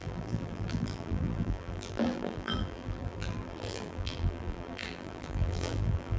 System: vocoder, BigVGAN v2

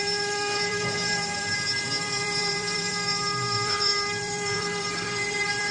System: vocoder, BigVGAN v2